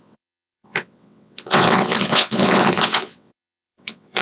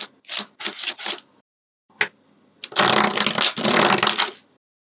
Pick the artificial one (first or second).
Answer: first